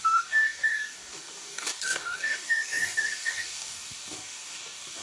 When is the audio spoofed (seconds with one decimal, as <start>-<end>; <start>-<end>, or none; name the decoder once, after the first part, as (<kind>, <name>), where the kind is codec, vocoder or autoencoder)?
0.0-5.0 (codec, DAC)